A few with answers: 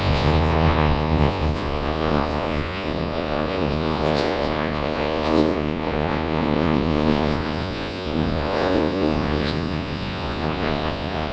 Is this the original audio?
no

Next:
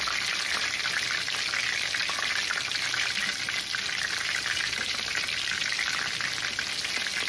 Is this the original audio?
yes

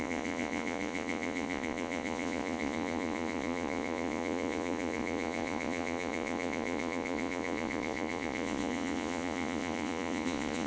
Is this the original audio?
no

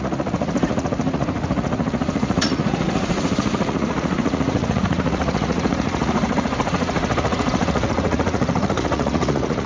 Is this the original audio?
no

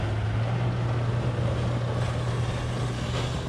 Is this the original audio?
yes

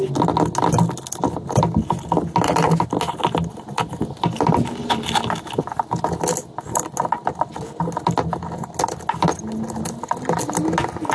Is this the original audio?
yes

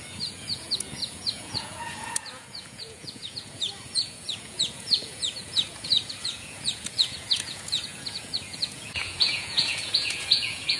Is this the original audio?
no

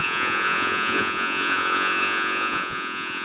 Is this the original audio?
no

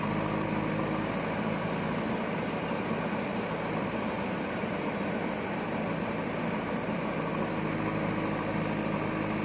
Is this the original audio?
yes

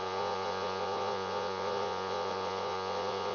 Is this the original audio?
no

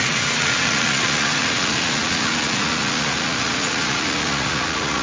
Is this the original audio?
no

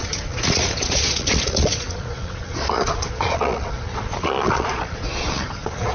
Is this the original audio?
no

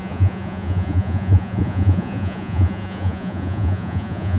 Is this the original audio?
no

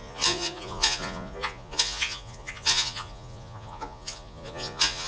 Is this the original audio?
no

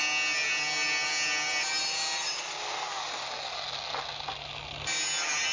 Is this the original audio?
yes